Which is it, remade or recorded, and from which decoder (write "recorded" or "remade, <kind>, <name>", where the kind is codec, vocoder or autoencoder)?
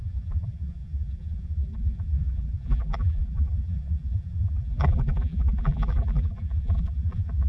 remade, vocoder, BigVGAN v2